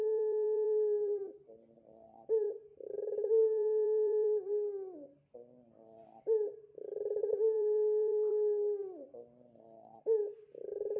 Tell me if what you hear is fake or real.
fake